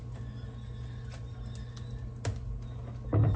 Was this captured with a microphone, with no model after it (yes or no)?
yes